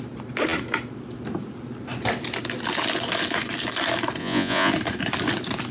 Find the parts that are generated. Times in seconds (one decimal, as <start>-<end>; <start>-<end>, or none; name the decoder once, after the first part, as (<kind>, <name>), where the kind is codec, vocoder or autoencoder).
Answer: 4.2-4.7 (vocoder, Vocos)